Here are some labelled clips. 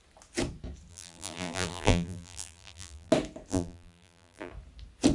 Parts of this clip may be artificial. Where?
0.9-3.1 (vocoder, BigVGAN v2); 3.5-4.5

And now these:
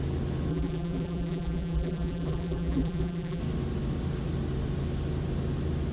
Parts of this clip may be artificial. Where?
0.5-3.4 (vocoder, BigVGAN v2)

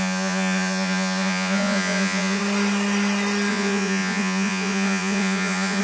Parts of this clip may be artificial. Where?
0.0-2.4 (vocoder, Vocos); 3.5-5.8

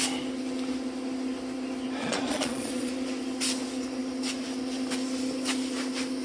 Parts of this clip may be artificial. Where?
2.0-2.9 (vocoder, Vocos)

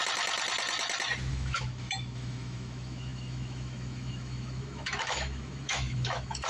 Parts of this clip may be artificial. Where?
1.3-6.5 (autoencoder, DAC-VAE)